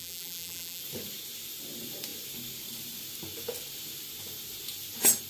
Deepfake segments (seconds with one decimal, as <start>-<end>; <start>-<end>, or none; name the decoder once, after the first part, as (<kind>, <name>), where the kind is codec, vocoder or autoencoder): 0.0-0.8 (vocoder, BigVGAN v2)